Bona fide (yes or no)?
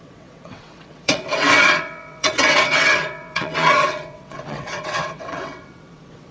no